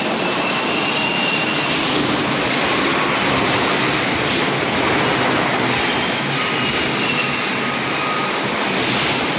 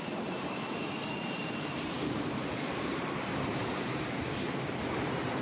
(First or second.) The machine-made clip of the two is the second